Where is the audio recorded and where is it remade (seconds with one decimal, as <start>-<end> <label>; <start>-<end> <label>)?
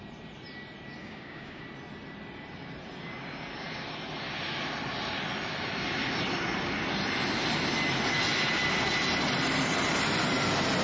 0.0-1.0 recorded; 1.0-1.6 remade; 1.6-10.8 recorded